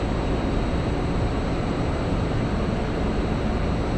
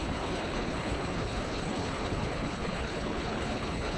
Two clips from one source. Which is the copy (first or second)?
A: second